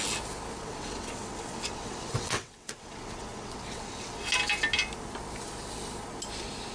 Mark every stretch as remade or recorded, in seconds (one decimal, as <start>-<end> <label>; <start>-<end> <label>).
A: 0.0-0.6 recorded; 0.6-4.2 remade; 4.2-6.7 recorded